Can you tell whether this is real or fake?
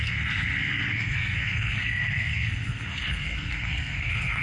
fake